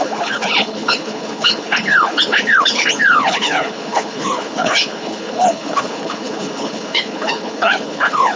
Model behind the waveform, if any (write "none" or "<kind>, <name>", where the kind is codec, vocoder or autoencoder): codec, HILCodec